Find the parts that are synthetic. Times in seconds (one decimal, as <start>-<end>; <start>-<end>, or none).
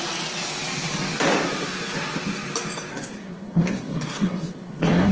2.9-5.1